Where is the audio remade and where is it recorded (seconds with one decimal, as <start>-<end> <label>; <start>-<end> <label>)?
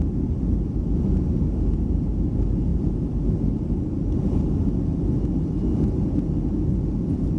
0.0-7.4 recorded